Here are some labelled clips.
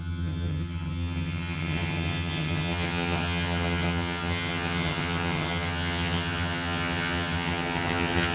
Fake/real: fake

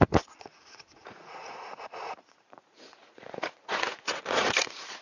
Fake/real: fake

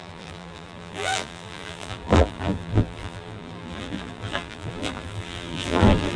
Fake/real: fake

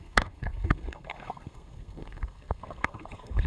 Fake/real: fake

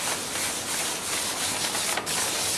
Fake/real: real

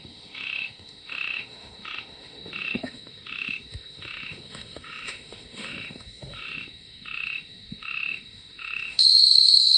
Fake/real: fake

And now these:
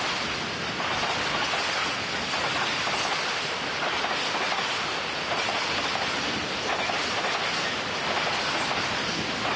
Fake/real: real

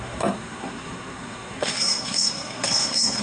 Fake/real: fake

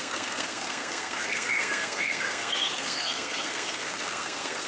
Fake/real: fake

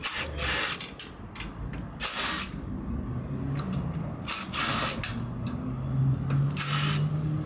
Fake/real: real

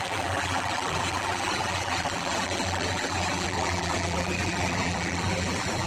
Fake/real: fake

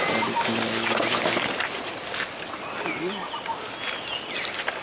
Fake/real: real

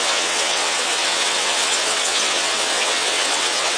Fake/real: fake